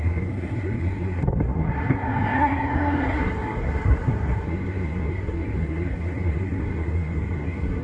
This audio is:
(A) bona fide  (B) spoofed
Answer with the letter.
B